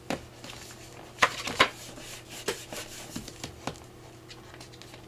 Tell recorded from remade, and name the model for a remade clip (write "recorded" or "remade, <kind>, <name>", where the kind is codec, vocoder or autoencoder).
recorded